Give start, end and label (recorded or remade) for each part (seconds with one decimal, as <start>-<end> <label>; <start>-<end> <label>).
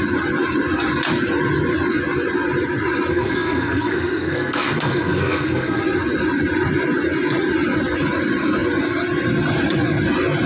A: 0.0-3.1 recorded; 3.1-5.8 remade; 5.8-10.5 recorded